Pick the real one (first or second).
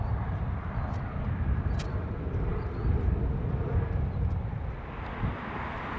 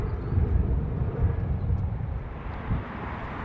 first